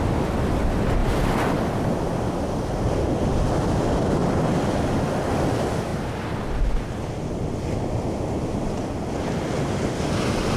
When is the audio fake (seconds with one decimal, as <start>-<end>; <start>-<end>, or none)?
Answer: none